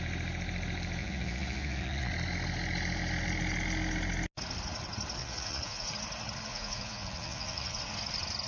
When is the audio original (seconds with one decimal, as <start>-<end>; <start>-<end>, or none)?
0.0-1.0; 2.1-5.2; 5.9-6.5; 7.8-8.5